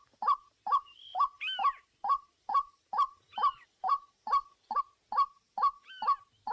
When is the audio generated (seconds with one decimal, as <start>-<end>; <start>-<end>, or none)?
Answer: 1.1-4.8